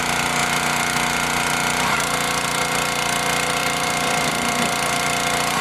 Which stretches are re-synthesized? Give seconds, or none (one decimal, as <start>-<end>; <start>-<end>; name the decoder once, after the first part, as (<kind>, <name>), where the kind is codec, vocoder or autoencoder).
3.6-4.3 (vocoder, BigVGAN v2)